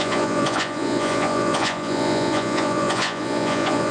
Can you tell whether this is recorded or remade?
remade